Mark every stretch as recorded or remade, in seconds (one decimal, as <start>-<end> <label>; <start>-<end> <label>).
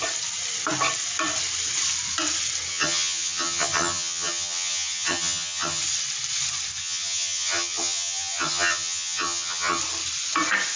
0.0-2.7 recorded; 2.7-5.8 remade; 5.8-6.8 recorded; 6.8-9.8 remade; 9.8-10.8 recorded